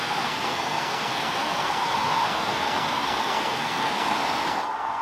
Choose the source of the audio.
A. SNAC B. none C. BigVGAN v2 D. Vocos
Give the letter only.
A